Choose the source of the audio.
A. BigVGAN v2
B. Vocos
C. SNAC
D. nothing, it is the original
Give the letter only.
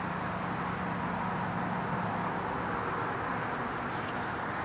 D